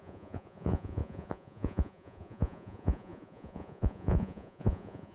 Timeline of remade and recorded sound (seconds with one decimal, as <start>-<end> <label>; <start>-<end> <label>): 0.0-5.1 remade